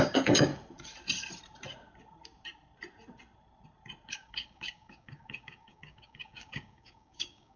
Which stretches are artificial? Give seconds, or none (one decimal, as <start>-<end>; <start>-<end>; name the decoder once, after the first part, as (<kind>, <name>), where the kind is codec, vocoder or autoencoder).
0.0-0.5 (codec, DAC); 4.1-7.6